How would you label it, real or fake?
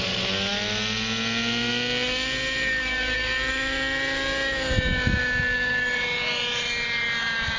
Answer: real